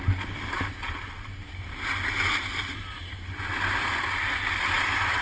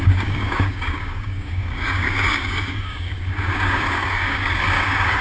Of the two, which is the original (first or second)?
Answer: first